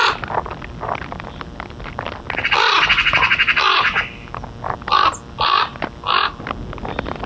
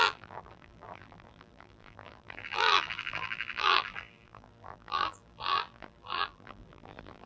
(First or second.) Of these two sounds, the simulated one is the second